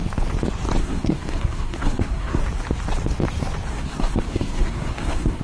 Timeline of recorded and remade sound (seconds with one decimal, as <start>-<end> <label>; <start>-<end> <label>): 0.0-0.8 recorded; 0.8-2.4 remade; 2.4-3.7 recorded; 3.7-5.4 remade